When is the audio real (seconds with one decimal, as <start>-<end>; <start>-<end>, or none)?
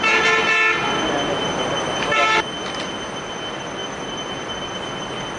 0.0-5.4